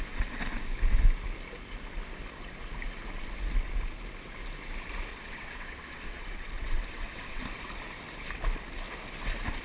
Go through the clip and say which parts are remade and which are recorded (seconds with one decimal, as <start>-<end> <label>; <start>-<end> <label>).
0.0-5.1 recorded; 5.1-7.4 remade; 7.4-9.6 recorded